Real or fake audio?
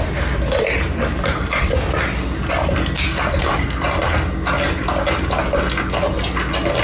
real